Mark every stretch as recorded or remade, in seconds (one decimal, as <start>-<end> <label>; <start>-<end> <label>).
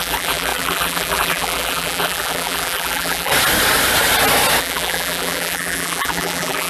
0.0-3.3 remade; 3.3-4.6 recorded; 4.6-6.7 remade